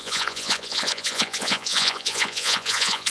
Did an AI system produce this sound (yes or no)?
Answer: yes